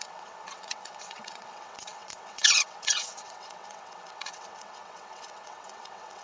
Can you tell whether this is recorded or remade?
remade